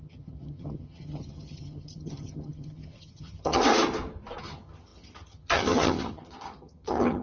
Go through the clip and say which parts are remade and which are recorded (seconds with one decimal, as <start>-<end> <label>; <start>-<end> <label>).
0.0-3.6 remade; 3.6-4.4 recorded; 4.4-7.2 remade